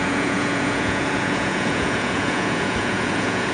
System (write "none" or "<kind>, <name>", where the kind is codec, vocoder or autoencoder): vocoder, Vocos